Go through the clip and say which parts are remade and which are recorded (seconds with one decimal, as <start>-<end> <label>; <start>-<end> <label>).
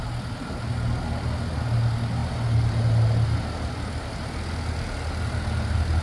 0.0-6.0 recorded